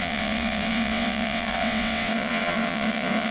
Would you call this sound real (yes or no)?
no